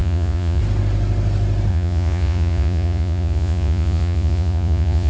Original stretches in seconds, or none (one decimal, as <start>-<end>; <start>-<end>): 0.6-1.7